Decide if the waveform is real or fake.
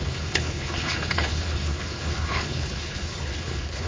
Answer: fake